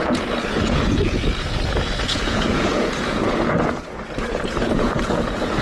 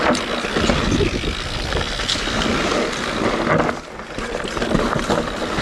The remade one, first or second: first